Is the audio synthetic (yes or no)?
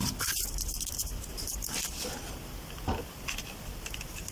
no